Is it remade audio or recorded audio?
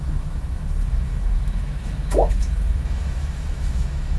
remade